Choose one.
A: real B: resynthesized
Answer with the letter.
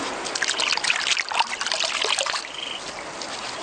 A